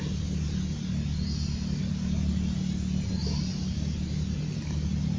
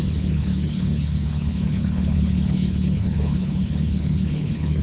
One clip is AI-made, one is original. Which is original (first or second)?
first